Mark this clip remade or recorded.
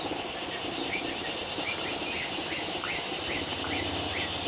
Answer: recorded